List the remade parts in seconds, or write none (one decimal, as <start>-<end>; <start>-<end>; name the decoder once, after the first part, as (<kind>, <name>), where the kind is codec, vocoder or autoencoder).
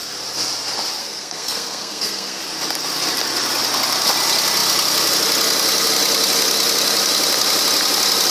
1.0-2.4 (codec, SNAC)